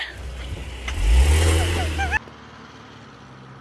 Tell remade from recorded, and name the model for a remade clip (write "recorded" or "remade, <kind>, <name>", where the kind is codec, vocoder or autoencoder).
recorded